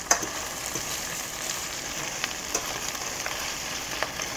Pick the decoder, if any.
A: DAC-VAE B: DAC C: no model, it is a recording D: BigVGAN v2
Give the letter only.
D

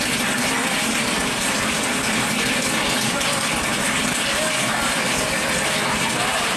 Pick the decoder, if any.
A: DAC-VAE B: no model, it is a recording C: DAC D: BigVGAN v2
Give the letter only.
B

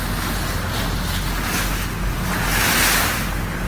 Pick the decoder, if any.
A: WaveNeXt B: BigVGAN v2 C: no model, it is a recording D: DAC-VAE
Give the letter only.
C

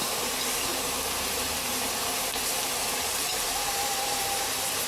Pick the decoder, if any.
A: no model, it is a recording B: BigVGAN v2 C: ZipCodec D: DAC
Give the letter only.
B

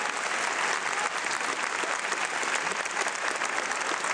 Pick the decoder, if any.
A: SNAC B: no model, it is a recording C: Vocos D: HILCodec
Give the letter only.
B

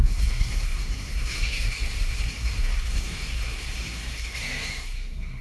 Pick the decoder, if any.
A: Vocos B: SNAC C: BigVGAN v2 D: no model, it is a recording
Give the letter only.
B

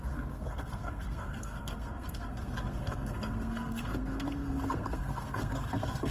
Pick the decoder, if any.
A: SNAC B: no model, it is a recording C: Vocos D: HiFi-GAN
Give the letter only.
A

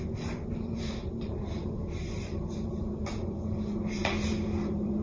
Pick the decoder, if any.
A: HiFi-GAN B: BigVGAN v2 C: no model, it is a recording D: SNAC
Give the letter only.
B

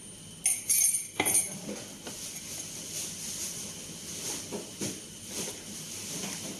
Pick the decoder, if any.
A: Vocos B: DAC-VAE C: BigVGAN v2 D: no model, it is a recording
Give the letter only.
D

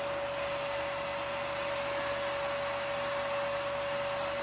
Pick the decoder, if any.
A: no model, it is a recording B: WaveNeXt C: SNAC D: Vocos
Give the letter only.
A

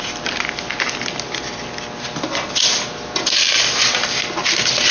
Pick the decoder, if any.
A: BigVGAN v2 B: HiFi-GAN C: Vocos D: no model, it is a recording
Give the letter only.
D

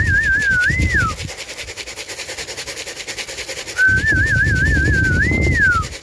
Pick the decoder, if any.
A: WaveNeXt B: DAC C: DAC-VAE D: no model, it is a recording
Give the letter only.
D